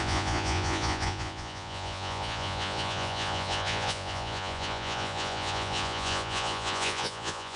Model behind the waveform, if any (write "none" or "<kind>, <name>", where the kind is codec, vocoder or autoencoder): vocoder, Vocos